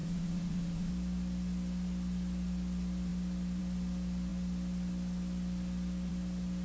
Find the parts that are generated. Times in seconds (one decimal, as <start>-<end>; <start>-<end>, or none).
0.0-0.9